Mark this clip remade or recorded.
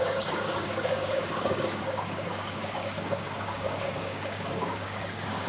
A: remade